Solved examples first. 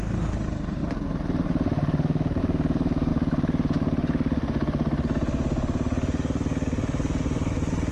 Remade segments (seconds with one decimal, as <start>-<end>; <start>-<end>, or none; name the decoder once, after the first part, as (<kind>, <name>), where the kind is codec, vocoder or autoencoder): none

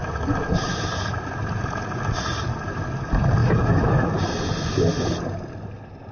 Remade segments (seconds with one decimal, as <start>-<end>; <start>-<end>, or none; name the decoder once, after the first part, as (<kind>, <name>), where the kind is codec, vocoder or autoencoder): 3.4-4.1 (autoencoder, DAC-VAE)

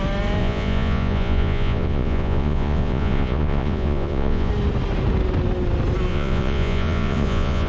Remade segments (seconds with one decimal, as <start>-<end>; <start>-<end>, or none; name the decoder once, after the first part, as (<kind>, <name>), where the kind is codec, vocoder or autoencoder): 0.4-4.5 (vocoder, Vocos); 6.1-7.7